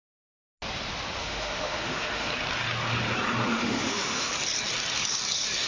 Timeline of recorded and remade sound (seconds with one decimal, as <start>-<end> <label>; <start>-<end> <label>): 0.0-1.2 recorded; 1.2-2.3 remade; 2.3-3.5 recorded; 3.5-4.3 remade; 4.3-5.7 recorded